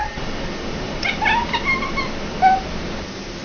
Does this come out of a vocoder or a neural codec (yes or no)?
no